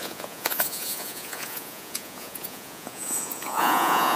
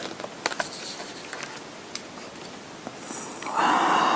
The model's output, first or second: first